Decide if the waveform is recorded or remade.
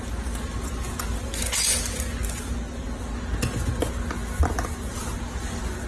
recorded